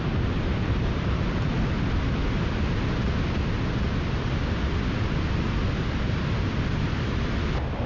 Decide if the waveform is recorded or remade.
recorded